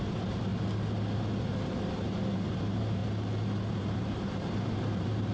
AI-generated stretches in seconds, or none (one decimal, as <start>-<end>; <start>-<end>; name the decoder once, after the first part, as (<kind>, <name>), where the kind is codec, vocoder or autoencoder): 0.0-0.5 (vocoder, BigVGAN v2); 1.4-3.0; 3.7-5.3